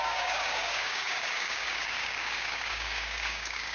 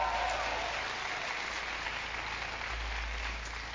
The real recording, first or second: second